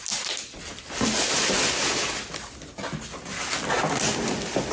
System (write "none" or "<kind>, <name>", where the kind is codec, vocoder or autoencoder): none